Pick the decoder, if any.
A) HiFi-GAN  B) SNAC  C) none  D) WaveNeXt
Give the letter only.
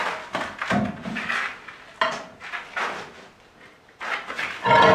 C